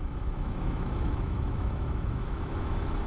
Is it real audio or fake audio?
fake